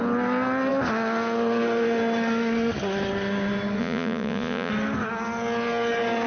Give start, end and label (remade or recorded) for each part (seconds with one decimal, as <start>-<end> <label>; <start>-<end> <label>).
0.0-3.8 recorded; 3.8-4.7 remade; 4.7-6.3 recorded